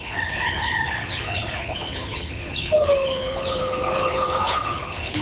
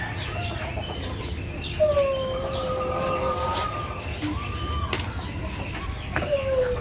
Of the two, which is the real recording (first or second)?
second